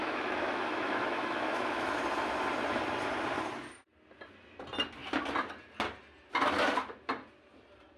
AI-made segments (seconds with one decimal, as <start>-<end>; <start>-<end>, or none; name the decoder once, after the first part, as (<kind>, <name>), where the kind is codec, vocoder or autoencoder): 0.0-2.0 (autoencoder, DAC-VAE)